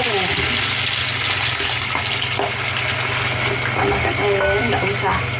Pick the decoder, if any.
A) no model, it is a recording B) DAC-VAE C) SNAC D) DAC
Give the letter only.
A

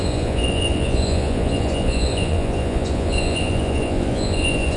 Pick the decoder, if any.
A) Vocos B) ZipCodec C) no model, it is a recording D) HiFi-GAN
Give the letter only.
A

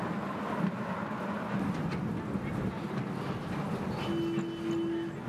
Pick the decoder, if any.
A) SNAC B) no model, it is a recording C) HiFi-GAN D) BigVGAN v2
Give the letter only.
B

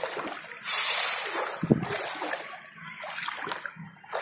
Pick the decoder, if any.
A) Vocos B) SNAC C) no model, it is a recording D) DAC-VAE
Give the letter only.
C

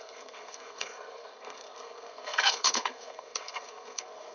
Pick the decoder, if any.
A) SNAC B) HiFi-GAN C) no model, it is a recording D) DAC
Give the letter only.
A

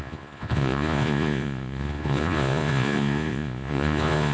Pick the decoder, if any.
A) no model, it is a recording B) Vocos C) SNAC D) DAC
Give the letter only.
B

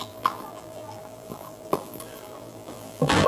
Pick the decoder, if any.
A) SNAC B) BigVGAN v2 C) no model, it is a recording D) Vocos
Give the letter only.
B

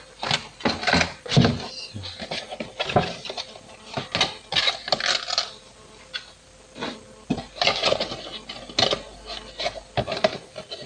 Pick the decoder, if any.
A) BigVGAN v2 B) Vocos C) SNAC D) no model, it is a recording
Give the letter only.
D